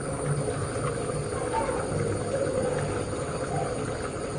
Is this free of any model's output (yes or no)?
yes